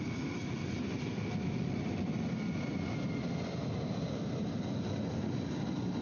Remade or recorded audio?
recorded